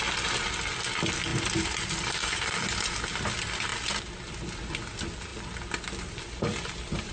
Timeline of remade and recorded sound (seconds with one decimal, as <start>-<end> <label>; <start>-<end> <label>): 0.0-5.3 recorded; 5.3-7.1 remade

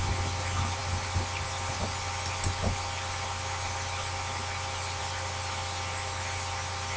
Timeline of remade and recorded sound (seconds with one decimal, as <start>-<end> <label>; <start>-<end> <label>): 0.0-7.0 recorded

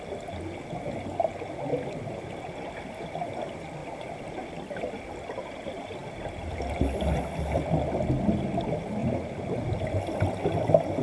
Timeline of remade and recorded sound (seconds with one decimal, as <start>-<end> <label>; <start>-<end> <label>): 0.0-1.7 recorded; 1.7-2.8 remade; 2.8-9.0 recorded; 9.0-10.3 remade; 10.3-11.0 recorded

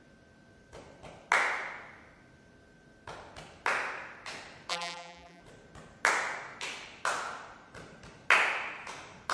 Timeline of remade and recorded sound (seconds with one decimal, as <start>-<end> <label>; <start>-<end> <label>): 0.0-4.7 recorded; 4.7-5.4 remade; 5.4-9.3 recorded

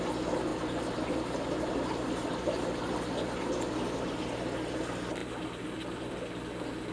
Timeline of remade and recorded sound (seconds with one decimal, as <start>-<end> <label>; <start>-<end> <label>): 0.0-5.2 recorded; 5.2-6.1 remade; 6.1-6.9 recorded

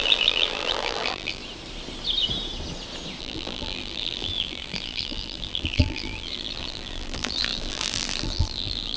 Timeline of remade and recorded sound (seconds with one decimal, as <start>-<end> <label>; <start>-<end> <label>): 0.0-1.4 remade; 1.4-3.2 recorded; 3.2-9.0 remade

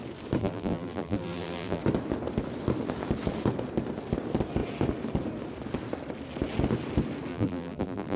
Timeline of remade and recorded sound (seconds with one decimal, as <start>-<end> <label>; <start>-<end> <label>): 0.0-0.4 recorded; 0.4-1.8 remade; 1.8-7.3 recorded; 7.3-8.2 remade

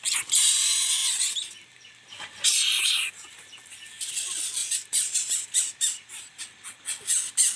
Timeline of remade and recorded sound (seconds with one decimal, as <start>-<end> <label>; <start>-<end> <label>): 0.0-1.0 recorded; 1.0-2.9 remade; 2.9-4.6 recorded; 4.6-6.4 remade; 6.4-7.6 recorded